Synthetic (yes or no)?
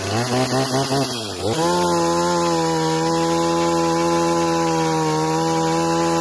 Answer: no